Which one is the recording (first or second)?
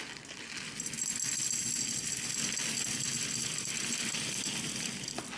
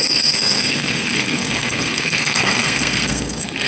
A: first